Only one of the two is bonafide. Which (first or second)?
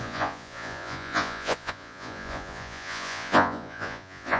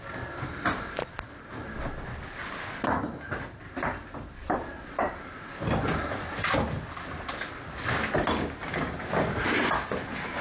second